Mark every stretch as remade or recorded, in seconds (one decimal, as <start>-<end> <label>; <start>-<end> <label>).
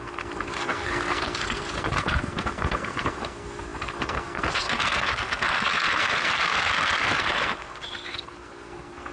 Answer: 0.0-9.1 remade